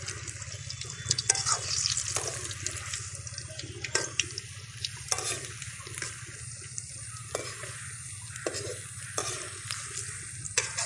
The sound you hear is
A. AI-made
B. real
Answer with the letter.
B